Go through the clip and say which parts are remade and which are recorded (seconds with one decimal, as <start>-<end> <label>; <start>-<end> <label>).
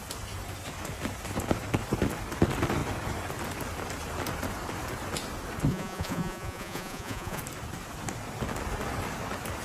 0.0-5.7 recorded; 5.7-7.4 remade; 7.4-9.6 recorded